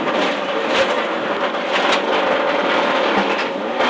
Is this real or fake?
real